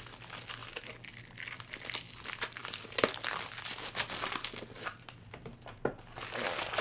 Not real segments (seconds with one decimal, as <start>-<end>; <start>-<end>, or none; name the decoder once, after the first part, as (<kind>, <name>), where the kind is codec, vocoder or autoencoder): none